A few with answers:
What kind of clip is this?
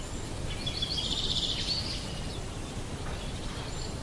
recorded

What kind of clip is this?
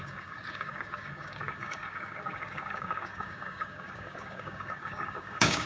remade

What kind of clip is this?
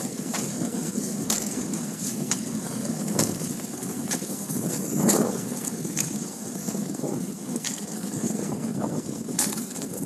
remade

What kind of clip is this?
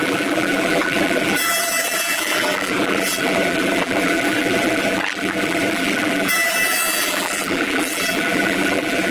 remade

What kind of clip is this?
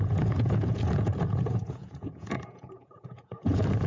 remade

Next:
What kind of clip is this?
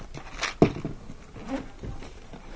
recorded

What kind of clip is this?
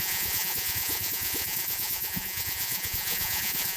remade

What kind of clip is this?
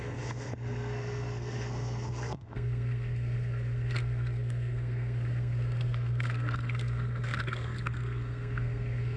remade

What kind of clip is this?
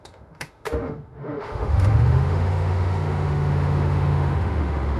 remade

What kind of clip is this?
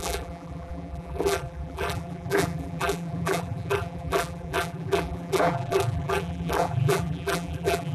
remade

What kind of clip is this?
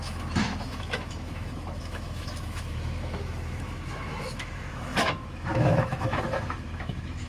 remade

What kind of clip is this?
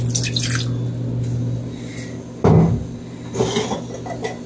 recorded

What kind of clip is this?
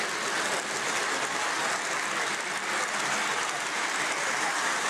recorded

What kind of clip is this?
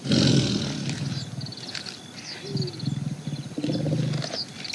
recorded